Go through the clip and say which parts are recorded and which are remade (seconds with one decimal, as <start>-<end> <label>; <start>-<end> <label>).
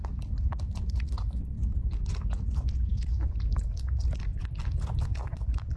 0.0-5.8 recorded